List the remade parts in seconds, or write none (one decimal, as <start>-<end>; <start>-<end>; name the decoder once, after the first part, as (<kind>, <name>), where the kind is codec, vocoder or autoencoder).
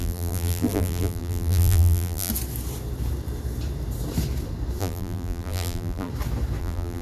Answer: 0.0-2.3 (vocoder, BigVGAN v2); 4.8-6.1; 6.6-7.0